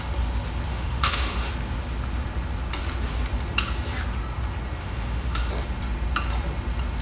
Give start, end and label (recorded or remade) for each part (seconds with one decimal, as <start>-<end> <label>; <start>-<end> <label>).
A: 0.0-0.7 recorded; 0.7-1.5 remade; 1.5-4.8 recorded; 4.8-5.5 remade; 5.5-7.0 recorded